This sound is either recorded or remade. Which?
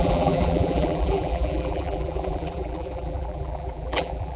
remade